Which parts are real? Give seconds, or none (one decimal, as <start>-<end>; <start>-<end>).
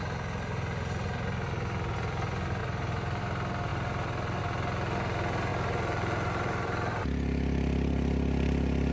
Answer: 0.0-2.6; 3.2-3.7; 4.4-5.5; 7.0-8.9